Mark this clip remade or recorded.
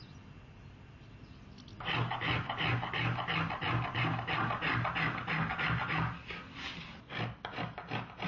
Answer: recorded